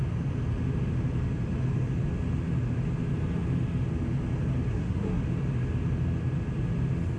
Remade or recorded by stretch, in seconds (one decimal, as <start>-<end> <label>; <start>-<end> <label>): 0.0-4.7 recorded; 4.7-5.2 remade; 5.2-7.2 recorded